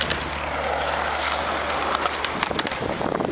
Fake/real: real